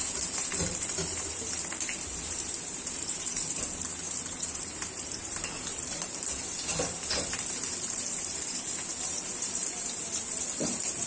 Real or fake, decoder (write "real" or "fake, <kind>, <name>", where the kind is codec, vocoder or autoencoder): fake, vocoder, BigVGAN v2